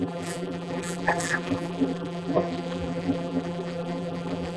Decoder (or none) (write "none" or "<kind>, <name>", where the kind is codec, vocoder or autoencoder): vocoder, BigVGAN v2